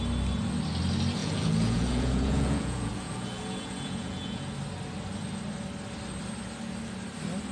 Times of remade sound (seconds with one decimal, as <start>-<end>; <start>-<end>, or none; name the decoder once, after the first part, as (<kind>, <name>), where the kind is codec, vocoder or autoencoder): 1.2-4.5 (vocoder, Vocos)